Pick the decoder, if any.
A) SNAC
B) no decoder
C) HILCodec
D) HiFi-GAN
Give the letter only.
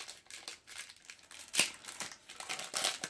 B